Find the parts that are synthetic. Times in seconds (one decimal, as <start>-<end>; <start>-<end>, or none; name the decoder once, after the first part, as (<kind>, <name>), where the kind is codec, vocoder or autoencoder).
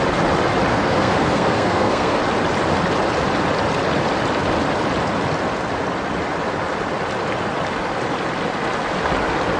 0.7-2.2 (codec, SNAC)